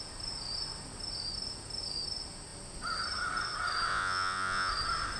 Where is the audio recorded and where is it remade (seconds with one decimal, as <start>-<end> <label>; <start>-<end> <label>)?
0.0-3.9 recorded; 3.9-4.7 remade; 4.7-5.2 recorded